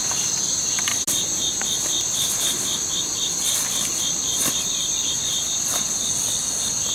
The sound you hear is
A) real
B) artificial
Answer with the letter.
A